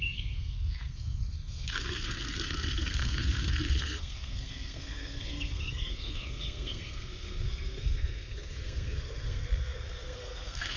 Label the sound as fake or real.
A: fake